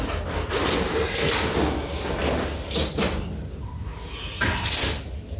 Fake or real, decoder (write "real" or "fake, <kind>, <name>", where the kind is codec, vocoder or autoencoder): real